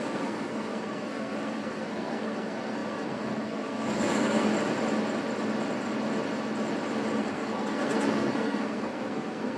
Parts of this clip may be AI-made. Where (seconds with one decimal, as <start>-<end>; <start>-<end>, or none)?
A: 0.0-4.5; 7.1-9.6